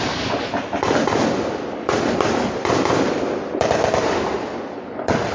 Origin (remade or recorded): recorded